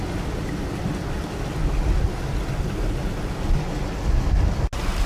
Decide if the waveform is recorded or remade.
recorded